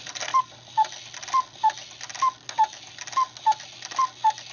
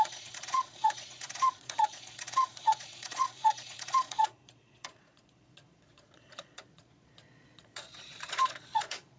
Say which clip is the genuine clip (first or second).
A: first